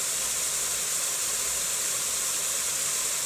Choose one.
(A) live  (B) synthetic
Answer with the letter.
A